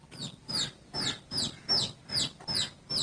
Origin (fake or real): real